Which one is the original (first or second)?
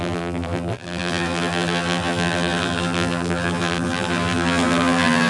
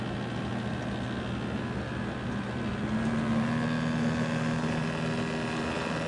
second